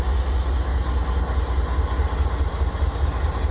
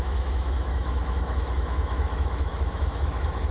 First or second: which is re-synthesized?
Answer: second